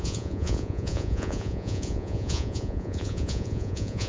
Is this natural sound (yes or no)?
no